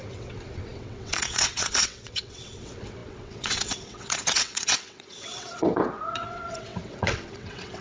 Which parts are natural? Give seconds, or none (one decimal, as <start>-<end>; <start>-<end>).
none

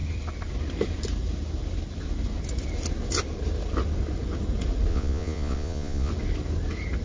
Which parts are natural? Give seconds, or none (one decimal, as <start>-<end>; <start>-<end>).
0.0-4.9; 6.1-7.0

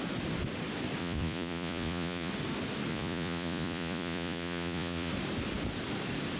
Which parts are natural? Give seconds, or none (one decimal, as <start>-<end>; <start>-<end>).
0.0-1.0; 2.3-2.9; 5.1-6.4

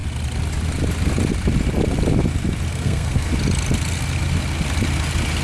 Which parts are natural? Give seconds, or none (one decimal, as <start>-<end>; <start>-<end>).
0.0-2.7; 3.3-5.4

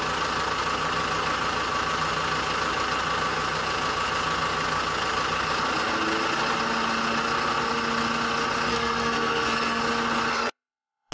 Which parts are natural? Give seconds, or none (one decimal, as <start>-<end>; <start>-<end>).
0.0-8.7; 9.8-10.3